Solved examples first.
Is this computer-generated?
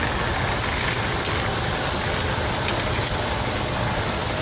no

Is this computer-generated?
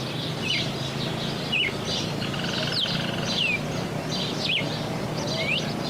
no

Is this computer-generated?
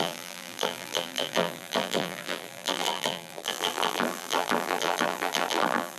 yes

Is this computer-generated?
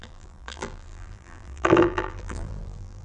yes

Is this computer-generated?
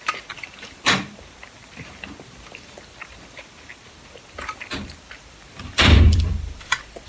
yes